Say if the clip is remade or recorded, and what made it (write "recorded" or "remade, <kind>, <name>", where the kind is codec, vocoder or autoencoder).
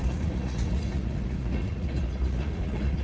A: remade, vocoder, Vocos